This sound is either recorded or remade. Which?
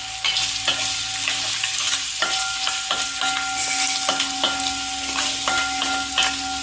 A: recorded